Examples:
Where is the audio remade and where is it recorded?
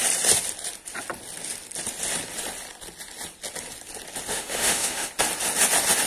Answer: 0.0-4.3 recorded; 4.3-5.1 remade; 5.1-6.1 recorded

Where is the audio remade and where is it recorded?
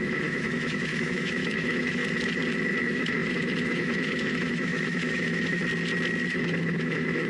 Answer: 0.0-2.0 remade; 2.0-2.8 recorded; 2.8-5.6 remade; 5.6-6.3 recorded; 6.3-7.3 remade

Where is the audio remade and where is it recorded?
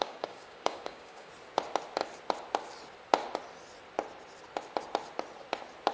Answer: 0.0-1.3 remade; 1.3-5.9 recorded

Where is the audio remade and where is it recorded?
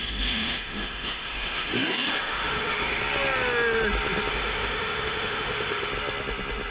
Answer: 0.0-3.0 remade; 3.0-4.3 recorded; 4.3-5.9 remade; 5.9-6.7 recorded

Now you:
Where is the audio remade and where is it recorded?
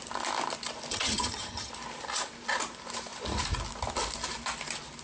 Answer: 0.0-0.9 recorded; 0.9-1.7 remade; 1.7-5.0 recorded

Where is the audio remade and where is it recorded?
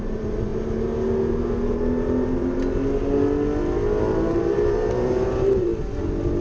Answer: 0.0-0.5 remade; 0.5-4.3 recorded; 4.3-5.7 remade; 5.7-6.4 recorded